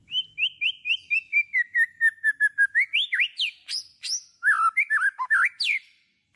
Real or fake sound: real